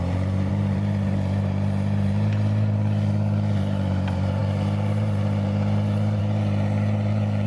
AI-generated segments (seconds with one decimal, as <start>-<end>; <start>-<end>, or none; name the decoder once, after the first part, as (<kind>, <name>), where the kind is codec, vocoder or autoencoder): 0.0-7.5 (vocoder, BigVGAN v2)